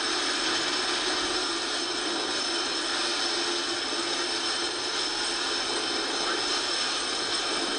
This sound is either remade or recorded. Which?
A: recorded